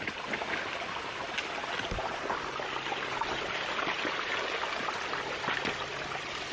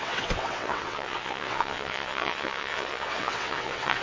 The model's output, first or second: second